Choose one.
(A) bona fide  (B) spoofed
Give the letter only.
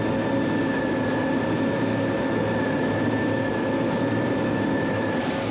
A